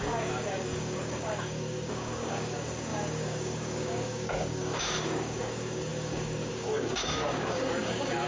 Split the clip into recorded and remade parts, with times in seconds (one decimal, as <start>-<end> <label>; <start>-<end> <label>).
0.0-8.3 remade